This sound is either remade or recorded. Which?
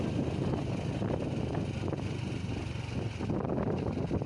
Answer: recorded